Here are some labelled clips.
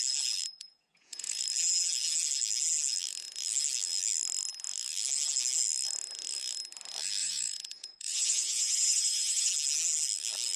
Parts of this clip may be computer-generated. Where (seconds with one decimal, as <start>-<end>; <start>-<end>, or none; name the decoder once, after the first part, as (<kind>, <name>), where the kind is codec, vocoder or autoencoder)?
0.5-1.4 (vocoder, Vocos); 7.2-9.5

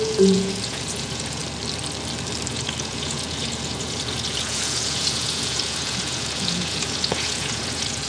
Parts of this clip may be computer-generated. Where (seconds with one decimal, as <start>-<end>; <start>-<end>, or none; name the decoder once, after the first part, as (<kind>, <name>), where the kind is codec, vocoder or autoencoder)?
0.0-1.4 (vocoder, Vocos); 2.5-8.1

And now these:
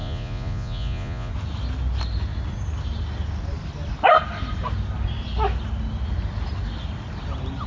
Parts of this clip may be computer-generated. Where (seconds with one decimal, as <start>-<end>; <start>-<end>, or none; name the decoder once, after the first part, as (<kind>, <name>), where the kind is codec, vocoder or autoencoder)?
0.0-1.3 (vocoder, Vocos)

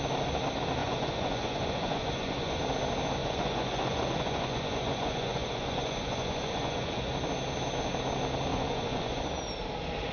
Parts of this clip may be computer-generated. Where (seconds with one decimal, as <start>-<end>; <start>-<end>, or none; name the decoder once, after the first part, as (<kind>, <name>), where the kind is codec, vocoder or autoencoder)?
0.8-2.6 (vocoder, Vocos); 3.2-7.1; 8.5-9.2

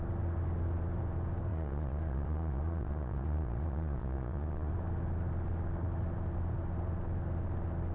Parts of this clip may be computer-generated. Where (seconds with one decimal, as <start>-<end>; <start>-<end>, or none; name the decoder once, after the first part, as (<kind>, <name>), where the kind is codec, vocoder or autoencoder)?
1.5-4.7 (vocoder, Vocos)

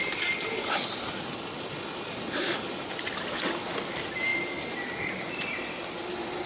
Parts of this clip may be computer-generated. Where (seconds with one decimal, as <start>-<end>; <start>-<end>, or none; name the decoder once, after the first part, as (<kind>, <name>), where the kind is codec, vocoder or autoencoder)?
none